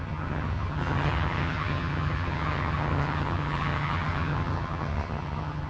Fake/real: fake